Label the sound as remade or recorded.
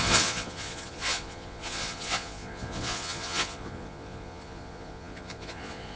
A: remade